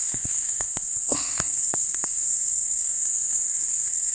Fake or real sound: fake